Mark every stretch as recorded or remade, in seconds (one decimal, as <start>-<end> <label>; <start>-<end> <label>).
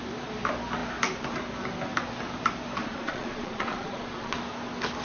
0.0-2.8 recorded; 2.8-4.4 remade; 4.4-5.0 recorded